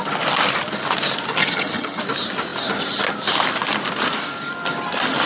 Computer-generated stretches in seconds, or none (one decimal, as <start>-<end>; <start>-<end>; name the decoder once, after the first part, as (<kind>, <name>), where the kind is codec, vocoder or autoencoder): 1.4-2.0 (vocoder, HiFi-GAN)